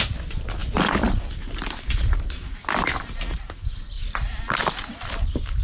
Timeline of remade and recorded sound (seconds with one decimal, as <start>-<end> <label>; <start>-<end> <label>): 0.0-5.6 recorded